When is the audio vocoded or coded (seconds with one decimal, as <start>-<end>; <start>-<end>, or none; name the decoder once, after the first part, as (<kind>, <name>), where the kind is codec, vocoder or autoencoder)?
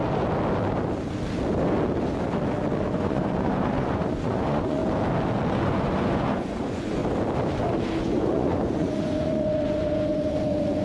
2.8-4.8 (vocoder, Vocos); 5.5-7.0; 8.0-10.8